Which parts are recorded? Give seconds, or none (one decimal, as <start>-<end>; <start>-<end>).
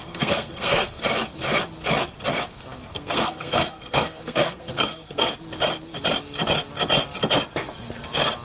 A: 1.0-2.9; 5.3-8.4